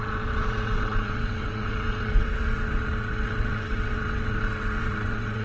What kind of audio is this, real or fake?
fake